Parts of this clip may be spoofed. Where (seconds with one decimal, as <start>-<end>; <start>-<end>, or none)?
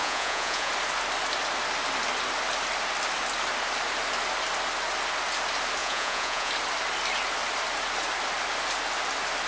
0.0-0.7; 5.8-6.5